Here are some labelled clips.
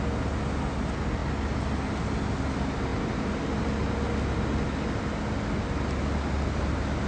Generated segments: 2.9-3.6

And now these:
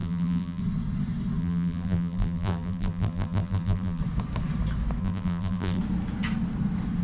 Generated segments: 0.0-0.6; 1.4-4.0; 5.0-5.8

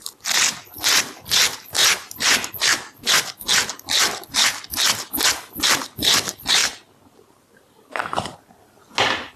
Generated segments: 6.6-8.7

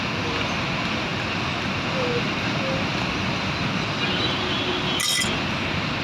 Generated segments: none

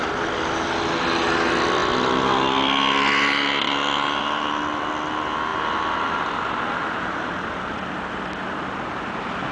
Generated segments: none

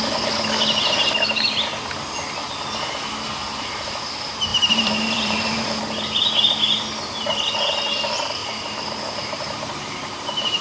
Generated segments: 4.5-5.9; 8.4-10.6

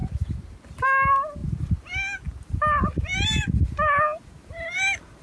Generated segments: none